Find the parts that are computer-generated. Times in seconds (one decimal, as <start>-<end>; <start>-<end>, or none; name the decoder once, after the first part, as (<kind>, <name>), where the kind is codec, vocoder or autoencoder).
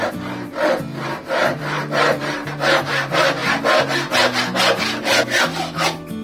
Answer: 1.4-2.9 (vocoder, BigVGAN v2)